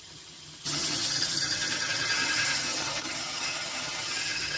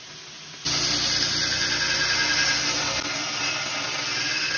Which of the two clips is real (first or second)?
second